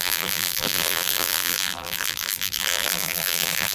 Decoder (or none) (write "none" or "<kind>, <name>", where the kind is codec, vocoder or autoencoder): vocoder, BigVGAN v2